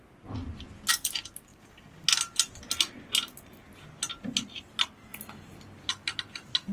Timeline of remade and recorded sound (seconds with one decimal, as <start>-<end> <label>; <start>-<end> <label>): 0.0-6.7 recorded